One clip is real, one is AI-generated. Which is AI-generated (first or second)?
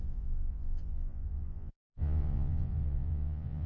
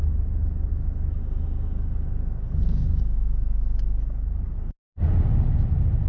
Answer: first